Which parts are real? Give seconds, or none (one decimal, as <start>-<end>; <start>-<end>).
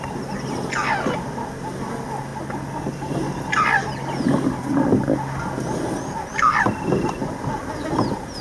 0.0-8.4